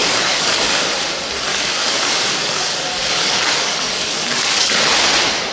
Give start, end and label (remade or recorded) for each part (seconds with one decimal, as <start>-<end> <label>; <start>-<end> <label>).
0.0-0.9 remade; 0.9-1.5 recorded; 1.5-4.8 remade; 4.8-5.5 recorded